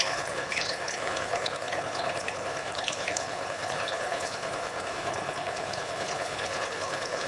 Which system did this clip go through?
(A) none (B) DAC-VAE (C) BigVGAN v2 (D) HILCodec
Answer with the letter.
D